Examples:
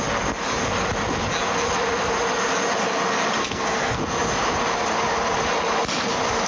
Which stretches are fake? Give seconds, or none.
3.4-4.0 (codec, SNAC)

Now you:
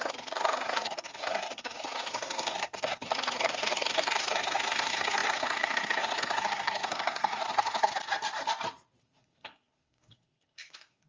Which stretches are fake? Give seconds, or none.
0.0-7.9 (codec, SNAC); 9.0-11.1